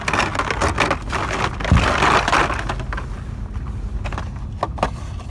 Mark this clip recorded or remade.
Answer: recorded